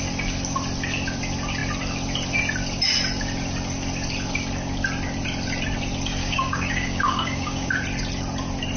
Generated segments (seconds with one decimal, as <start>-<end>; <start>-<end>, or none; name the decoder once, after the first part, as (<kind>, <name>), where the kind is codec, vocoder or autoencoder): 6.2-7.7 (codec, DAC)

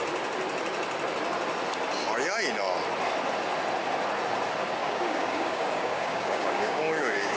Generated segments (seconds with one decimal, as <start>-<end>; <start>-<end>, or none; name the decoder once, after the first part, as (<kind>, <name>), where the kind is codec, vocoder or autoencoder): 4.8-7.4 (codec, DAC)

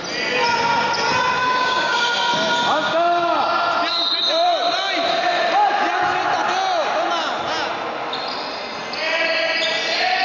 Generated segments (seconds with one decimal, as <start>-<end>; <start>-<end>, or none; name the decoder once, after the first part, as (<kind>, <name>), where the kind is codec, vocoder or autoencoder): 1.4-2.0 (codec, DAC)

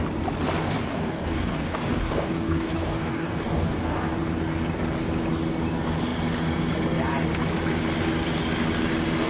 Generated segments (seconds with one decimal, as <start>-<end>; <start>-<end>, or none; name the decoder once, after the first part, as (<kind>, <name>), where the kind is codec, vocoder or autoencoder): 0.6-4.2 (codec, DAC)